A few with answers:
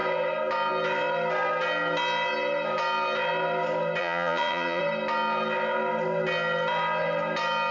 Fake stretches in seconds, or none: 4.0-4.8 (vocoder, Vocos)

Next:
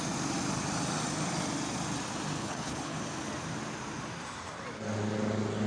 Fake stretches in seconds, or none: 2.4-3.0 (codec, HILCodec)

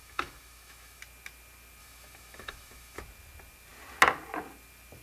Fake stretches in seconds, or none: 0.0-1.0 (autoencoder, DAC-VAE); 1.8-3.0

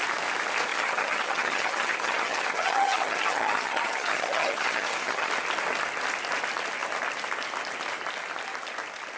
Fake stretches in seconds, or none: 0.7-5.3 (vocoder, HiFi-GAN)

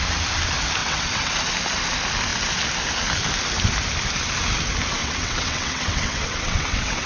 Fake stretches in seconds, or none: 0.8-1.3 (vocoder, WaveNeXt); 5.0-7.1

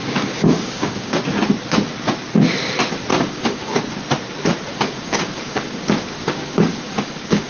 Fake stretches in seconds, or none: 0.0-1.2 (codec, DAC); 3.1-3.8; 4.7-7.5

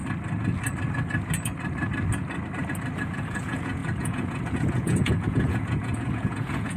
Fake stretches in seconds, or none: 3.0-6.8 (vocoder, Vocos)

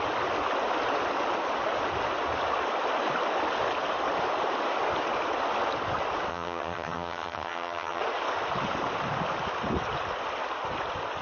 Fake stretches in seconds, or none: 6.3-8.0 (vocoder, HiFi-GAN)